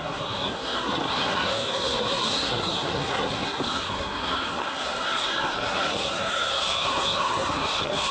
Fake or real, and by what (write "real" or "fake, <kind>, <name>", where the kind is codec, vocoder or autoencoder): fake, codec, SNAC